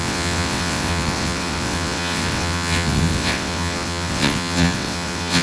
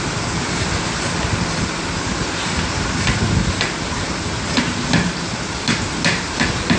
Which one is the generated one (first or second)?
first